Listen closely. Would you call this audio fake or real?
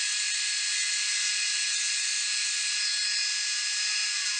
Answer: real